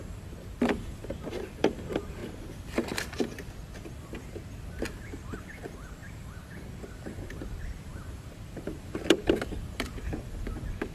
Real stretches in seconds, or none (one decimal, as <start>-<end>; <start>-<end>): none